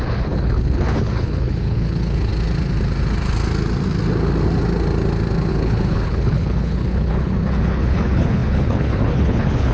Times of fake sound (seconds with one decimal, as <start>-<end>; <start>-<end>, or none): 0.0-2.3; 5.5-9.7